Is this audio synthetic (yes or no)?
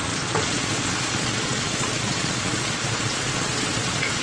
yes